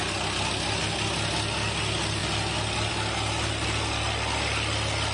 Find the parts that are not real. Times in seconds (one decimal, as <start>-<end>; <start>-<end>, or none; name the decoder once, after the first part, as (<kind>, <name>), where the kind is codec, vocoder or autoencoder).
none